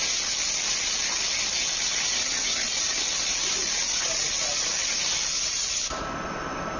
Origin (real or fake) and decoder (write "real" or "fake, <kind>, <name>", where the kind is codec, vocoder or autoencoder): real